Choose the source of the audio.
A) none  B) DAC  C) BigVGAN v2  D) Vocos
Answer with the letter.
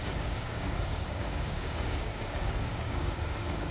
B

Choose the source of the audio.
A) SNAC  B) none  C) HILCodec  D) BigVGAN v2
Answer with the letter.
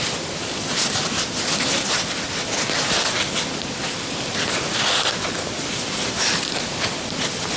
D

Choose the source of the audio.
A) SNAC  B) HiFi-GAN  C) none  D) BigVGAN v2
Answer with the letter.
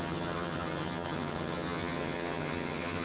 B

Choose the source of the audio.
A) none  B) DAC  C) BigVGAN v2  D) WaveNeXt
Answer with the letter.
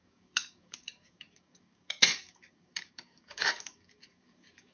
B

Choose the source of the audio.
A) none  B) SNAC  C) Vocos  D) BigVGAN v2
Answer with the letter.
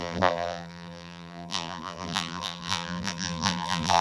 D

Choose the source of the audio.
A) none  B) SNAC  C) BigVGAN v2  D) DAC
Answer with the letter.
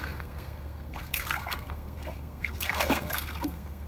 B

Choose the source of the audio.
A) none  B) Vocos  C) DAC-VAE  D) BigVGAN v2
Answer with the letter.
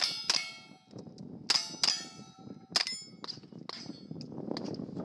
A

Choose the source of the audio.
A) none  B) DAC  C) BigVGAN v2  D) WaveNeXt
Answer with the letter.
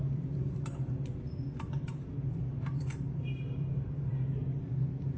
C